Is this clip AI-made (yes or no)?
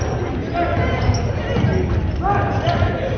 no